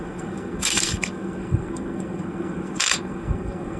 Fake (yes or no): yes